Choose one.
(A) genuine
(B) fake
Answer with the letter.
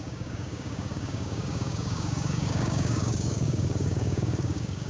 B